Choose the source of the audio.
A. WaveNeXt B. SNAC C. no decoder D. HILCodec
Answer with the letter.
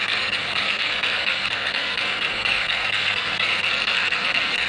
B